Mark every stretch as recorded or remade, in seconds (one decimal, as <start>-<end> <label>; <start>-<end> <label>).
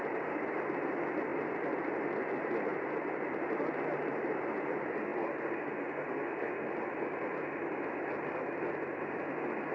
0.0-9.7 recorded